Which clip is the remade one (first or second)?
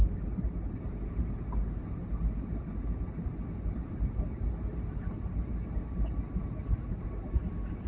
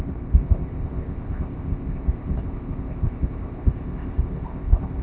second